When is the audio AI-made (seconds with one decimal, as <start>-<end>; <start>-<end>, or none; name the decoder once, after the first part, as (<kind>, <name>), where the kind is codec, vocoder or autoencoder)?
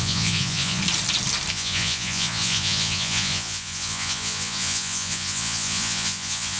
0.0-0.8 (vocoder, Vocos); 1.5-6.6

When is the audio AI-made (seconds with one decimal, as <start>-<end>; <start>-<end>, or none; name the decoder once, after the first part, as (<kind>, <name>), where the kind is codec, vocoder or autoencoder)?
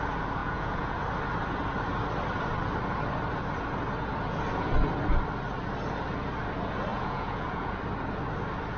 0.4-1.0 (vocoder, Vocos); 6.9-7.8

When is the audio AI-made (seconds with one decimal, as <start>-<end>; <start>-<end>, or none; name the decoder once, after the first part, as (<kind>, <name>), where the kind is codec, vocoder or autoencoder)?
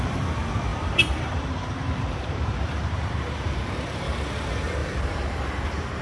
0.7-4.3 (vocoder, BigVGAN v2); 4.8-5.6